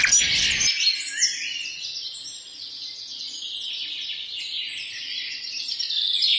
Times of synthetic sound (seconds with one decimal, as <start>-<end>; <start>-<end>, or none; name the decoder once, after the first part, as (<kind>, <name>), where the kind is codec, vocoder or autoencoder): none